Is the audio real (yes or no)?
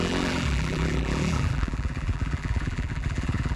no